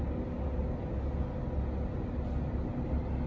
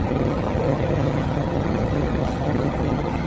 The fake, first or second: second